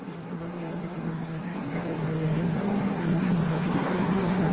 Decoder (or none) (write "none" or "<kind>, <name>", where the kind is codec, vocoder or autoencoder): codec, SNAC